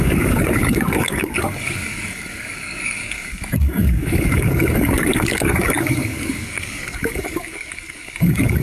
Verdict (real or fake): fake